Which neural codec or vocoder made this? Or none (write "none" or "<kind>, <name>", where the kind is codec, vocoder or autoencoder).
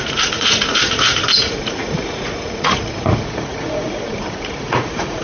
vocoder, Vocos